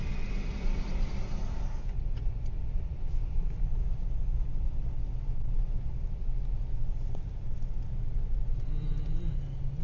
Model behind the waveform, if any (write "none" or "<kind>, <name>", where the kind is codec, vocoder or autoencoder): none